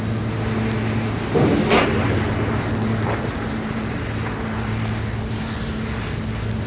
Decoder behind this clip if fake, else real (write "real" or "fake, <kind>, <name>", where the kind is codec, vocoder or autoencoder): real